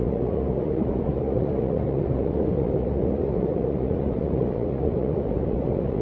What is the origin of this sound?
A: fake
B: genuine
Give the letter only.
A